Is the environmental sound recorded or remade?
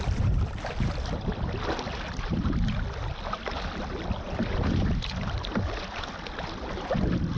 recorded